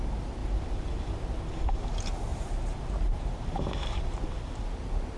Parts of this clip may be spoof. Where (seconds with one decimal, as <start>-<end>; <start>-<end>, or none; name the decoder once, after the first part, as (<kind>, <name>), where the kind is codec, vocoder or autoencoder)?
0.4-1.4 (vocoder, BigVGAN v2); 2.3-4.2